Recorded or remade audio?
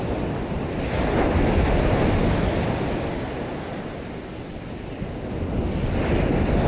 recorded